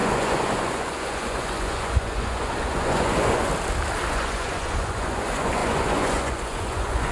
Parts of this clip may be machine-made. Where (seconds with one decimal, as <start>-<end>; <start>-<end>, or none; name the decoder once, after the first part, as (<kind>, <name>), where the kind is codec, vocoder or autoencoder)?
0.0-3.5 (vocoder, Vocos); 4.1-7.1

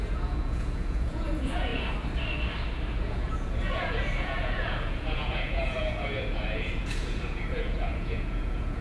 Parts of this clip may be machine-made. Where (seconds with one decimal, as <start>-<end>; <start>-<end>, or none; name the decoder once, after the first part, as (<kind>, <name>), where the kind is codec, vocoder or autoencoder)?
0.0-1.7 (vocoder, Vocos); 3.0-8.8

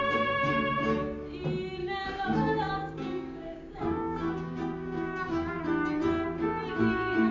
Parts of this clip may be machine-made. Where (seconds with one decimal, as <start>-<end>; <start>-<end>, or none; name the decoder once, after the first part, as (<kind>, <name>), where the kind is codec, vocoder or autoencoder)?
1.8-5.6 (codec, DAC)

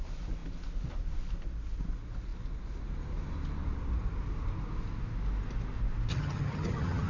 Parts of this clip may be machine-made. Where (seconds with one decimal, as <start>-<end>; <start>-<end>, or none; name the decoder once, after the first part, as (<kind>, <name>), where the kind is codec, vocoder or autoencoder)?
6.1-7.1 (vocoder, HiFi-GAN)